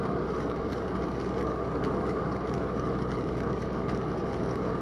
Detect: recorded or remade remade